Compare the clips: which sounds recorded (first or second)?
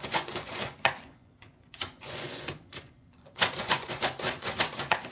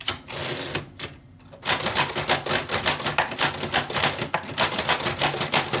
second